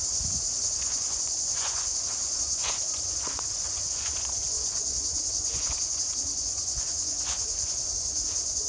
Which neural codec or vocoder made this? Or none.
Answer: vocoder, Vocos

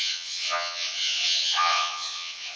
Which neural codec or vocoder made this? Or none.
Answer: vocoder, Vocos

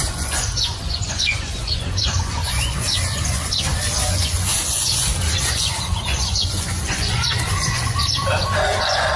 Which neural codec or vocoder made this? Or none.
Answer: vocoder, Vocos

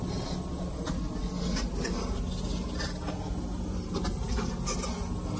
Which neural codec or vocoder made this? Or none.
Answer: none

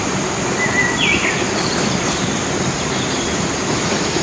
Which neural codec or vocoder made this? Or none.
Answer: none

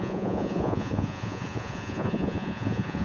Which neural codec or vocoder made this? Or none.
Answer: vocoder, Vocos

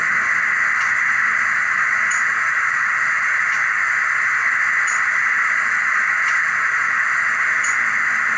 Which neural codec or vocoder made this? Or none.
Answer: none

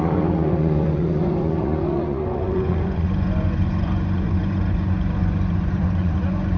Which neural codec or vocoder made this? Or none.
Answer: vocoder, Vocos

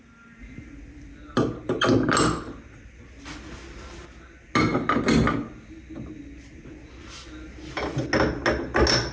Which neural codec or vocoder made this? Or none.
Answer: none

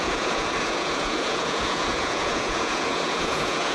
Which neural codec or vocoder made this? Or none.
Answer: vocoder, Vocos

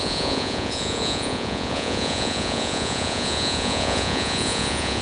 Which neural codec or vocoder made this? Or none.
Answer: vocoder, Vocos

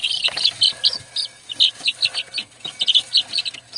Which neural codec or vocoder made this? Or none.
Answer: none